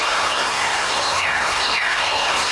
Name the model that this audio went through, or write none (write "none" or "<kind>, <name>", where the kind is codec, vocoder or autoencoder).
codec, SNAC